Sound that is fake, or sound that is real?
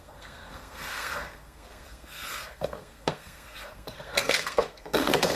fake